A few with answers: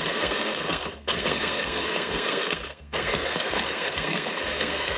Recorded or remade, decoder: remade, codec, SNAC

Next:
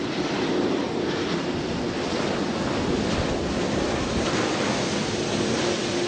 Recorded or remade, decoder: recorded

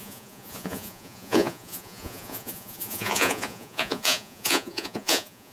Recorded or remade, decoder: remade, vocoder, Vocos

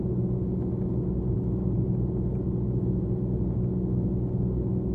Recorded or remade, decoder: recorded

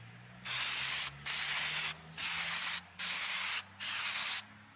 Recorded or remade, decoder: recorded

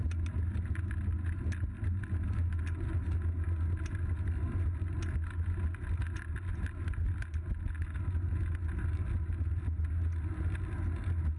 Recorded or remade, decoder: recorded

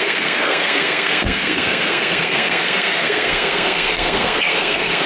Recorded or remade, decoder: remade, codec, SNAC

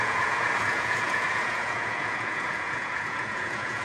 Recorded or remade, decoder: remade, vocoder, Vocos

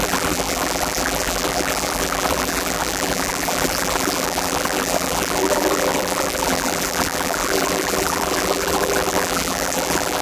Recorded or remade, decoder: remade, vocoder, BigVGAN v2